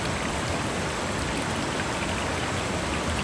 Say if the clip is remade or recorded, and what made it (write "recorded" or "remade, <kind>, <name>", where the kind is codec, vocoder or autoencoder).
recorded